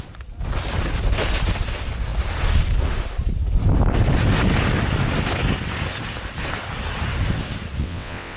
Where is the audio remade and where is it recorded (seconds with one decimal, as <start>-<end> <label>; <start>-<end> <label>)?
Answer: 0.0-7.8 recorded; 7.8-8.4 remade